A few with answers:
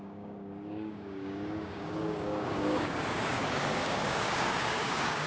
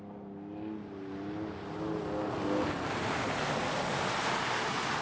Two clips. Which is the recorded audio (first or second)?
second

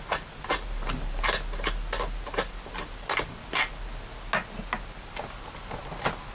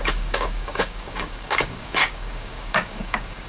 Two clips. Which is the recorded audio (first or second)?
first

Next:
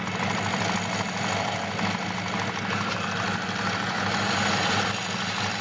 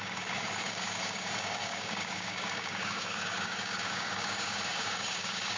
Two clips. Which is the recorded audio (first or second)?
first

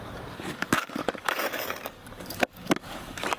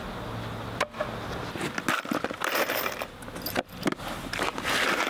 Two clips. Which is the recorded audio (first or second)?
second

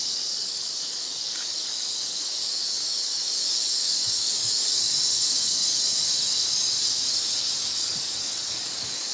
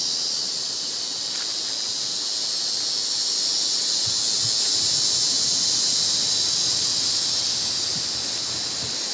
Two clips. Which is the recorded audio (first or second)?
second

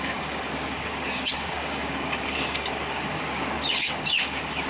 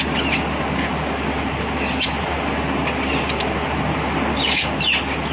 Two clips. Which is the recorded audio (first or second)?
second